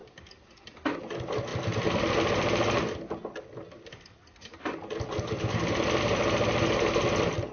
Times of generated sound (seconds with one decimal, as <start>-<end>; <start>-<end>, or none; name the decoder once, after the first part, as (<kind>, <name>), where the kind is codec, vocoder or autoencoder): none